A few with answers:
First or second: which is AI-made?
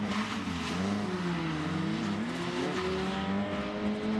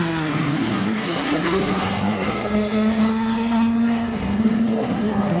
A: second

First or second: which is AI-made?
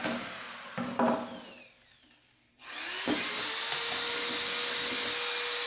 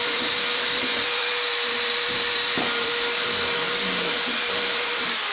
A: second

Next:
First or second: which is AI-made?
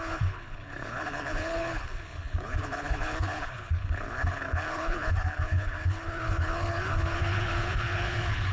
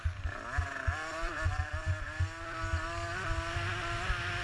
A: first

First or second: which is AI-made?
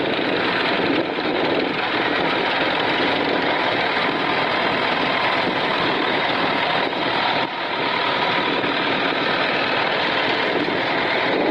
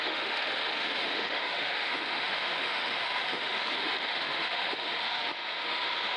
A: second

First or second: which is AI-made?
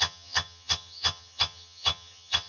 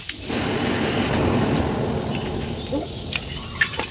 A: first